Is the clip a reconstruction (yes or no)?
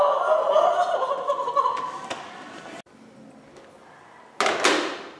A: no